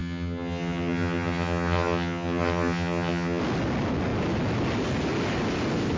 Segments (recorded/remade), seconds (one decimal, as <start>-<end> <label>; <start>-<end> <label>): 0.0-3.4 remade; 3.4-6.0 recorded